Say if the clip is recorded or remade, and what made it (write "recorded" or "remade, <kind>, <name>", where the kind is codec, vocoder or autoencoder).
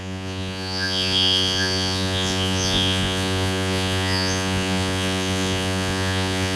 remade, vocoder, Vocos